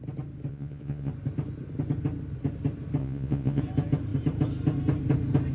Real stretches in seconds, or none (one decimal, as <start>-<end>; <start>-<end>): 0.0-0.5; 1.1-3.0; 3.6-5.5